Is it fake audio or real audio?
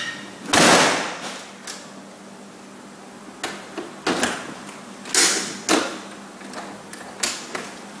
real